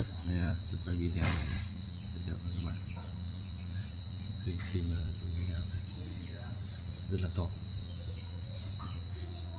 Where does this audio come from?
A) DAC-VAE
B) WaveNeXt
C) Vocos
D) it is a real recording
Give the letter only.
C